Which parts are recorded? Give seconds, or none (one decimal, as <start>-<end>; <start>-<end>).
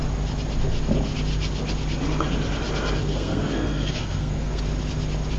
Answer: 0.0-3.1; 4.6-5.4